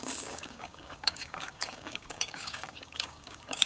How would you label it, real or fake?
fake